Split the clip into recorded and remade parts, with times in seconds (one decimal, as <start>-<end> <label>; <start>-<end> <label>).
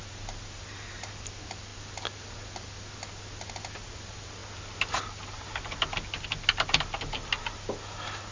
0.0-8.3 recorded